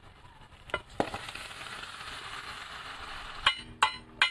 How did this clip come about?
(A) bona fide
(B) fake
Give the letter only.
A